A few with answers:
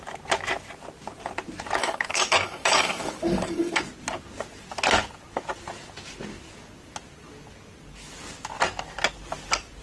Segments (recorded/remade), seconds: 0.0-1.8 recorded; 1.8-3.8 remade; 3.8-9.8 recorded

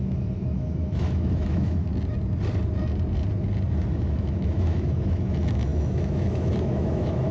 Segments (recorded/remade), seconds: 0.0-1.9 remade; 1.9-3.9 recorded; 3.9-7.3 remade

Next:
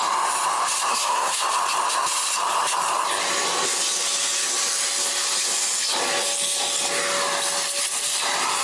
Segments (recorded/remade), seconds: 0.0-0.9 recorded; 0.9-1.4 remade; 1.4-8.6 recorded